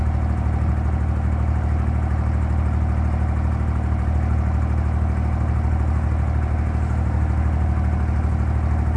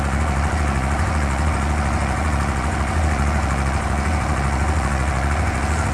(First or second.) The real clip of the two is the first